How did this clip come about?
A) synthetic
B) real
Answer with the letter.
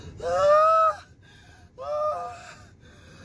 B